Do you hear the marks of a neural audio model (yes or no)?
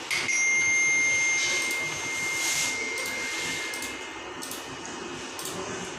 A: no